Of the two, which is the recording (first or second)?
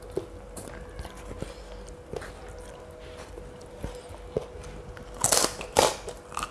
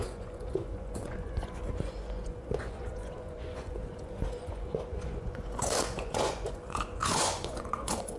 first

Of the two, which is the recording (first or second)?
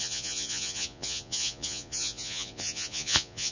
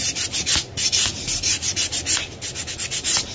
second